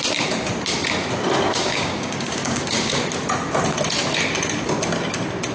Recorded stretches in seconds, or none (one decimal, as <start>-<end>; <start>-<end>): 0.0-1.5; 3.0-5.5